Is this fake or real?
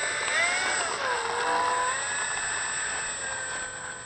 real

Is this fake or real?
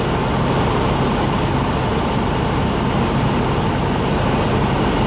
real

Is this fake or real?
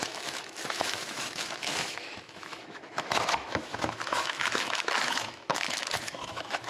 fake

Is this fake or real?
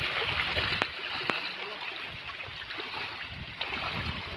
real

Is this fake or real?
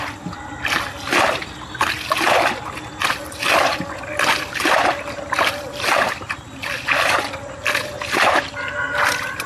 real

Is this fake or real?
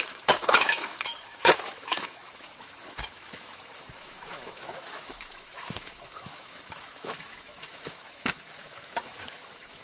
fake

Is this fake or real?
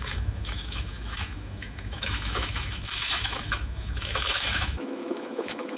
fake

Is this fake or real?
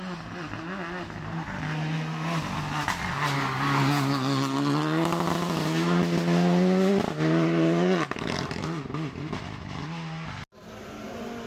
real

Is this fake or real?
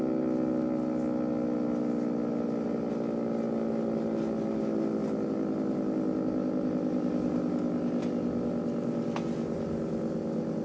real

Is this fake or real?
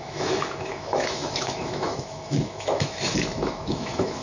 fake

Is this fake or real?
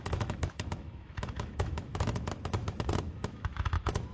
fake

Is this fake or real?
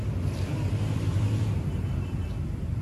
real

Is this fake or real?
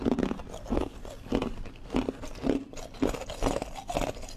real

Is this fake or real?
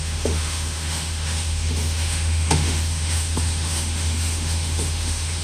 fake